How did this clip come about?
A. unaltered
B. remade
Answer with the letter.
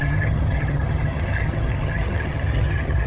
B